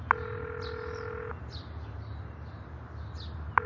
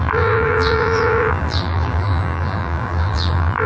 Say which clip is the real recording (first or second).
first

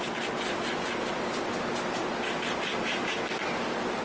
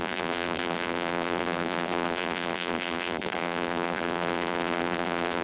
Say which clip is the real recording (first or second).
first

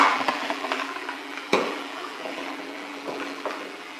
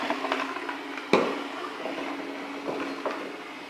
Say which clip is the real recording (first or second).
second